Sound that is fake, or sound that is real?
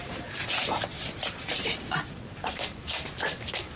fake